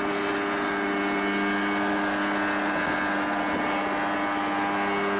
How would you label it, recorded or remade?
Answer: recorded